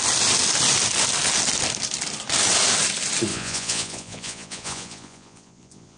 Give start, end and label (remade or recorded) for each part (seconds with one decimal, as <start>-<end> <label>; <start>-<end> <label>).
0.0-3.3 recorded; 3.3-6.0 remade